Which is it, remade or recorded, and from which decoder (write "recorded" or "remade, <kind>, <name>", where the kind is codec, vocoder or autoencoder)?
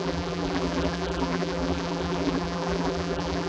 remade, vocoder, BigVGAN v2